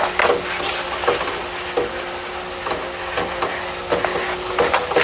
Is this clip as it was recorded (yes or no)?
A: yes